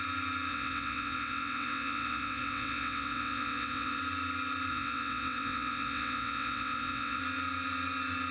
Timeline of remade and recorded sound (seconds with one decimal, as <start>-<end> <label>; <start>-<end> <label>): 0.0-0.5 recorded; 0.5-4.0 remade; 4.0-4.7 recorded; 4.7-7.2 remade; 7.2-8.3 recorded